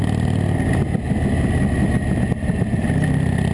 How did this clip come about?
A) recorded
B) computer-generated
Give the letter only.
A